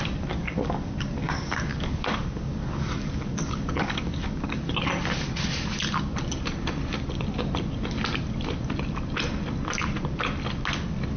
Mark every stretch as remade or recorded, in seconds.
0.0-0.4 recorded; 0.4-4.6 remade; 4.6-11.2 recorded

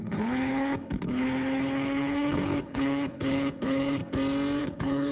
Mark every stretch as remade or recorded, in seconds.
0.0-4.0 remade; 4.0-4.6 recorded; 4.6-5.1 remade

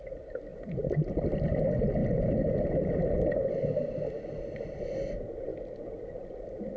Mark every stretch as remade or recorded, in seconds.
0.0-2.0 remade; 2.0-4.8 recorded; 4.8-5.5 remade; 5.5-6.3 recorded; 6.3-6.8 remade

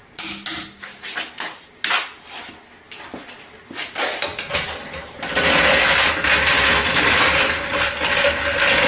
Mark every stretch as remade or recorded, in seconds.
0.0-8.9 recorded

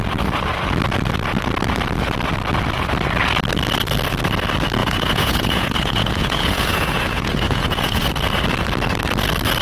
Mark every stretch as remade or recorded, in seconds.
0.0-4.8 recorded; 4.8-8.1 remade; 8.1-9.6 recorded

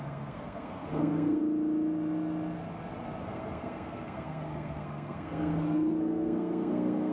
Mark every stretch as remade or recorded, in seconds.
0.0-1.4 remade; 1.4-3.2 recorded; 3.2-7.1 remade

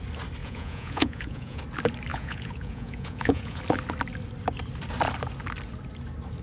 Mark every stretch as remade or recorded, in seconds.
0.0-0.4 recorded; 0.4-1.6 remade; 1.6-2.1 recorded; 2.1-3.6 remade; 3.6-6.4 recorded